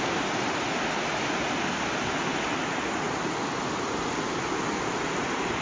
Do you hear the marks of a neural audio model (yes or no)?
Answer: no